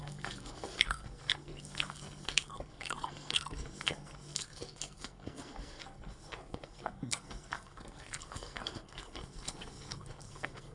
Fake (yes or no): yes